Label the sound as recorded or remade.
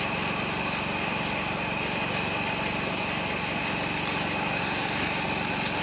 recorded